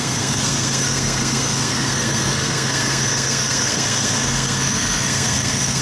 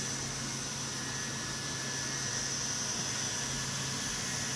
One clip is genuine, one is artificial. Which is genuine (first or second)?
second